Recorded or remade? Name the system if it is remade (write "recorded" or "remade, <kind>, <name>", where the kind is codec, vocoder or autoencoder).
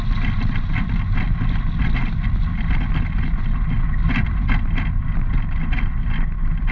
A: recorded